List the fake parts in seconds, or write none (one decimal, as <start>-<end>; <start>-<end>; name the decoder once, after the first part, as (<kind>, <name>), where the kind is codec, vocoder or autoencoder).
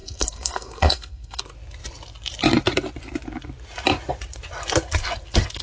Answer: 0.0-1.4 (codec, SNAC)